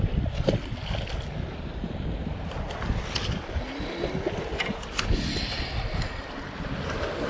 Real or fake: real